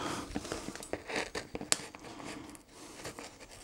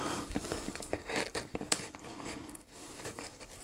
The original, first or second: first